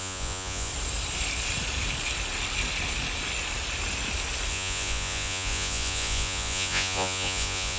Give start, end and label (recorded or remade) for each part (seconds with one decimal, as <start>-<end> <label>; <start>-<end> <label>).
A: 0.0-0.7 remade; 0.7-4.5 recorded; 4.5-7.8 remade